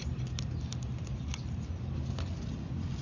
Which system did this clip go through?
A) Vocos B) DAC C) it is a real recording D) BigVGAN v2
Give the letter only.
C